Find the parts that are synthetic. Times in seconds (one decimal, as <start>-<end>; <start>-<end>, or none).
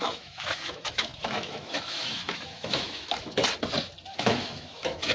0.0-3.4; 4.1-5.1